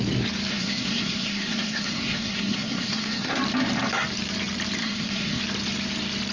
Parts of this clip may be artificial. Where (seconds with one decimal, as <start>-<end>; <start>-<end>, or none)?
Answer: 0.5-3.4; 4.8-5.4